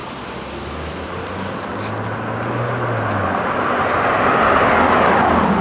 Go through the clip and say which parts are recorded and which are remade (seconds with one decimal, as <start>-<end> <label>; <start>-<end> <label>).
0.0-5.6 recorded